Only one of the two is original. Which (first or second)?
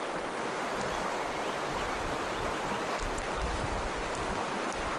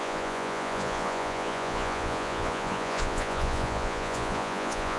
first